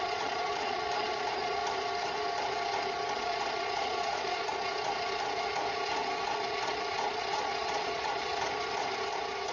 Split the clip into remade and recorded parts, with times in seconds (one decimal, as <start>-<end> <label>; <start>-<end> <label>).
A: 0.0-1.6 remade; 1.6-3.1 recorded; 3.1-4.5 remade; 4.5-7.1 recorded; 7.1-8.3 remade; 8.3-9.5 recorded